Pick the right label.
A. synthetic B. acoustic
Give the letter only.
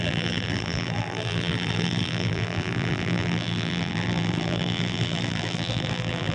A